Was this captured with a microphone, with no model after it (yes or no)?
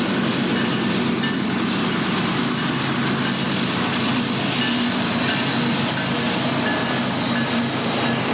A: yes